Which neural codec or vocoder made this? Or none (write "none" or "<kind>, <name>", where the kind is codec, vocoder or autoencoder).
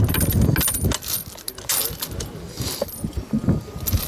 none